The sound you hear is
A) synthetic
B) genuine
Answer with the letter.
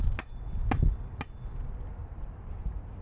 B